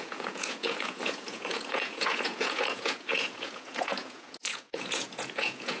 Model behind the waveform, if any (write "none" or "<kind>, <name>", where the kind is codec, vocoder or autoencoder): vocoder, Vocos